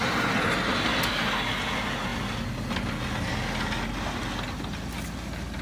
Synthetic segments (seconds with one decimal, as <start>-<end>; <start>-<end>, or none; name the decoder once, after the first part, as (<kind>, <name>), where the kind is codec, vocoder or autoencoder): none